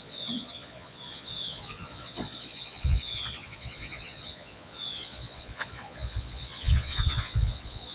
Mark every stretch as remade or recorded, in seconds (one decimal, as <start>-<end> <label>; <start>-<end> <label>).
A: 0.0-7.9 remade